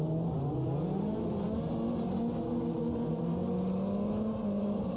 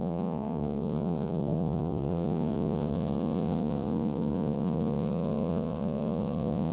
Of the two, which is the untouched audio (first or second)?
first